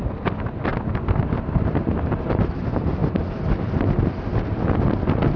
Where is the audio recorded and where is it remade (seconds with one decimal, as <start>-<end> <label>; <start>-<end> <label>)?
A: 0.0-5.4 recorded

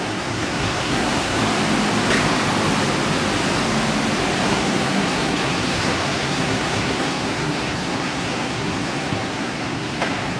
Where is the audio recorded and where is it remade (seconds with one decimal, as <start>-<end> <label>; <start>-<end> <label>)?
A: 0.0-1.4 remade; 1.4-4.4 recorded; 4.4-10.4 remade

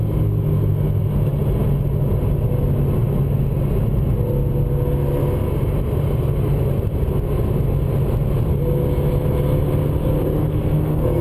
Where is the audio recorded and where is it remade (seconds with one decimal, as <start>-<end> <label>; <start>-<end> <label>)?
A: 0.0-10.4 recorded; 10.4-11.2 remade